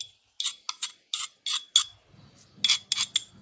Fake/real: real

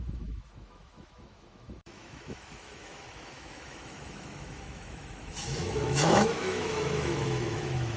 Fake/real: fake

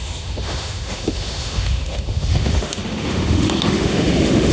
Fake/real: fake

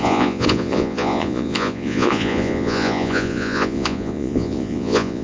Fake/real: fake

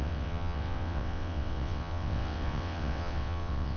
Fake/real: fake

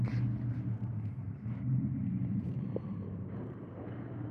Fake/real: fake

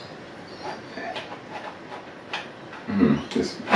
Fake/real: real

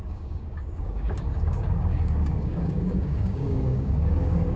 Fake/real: fake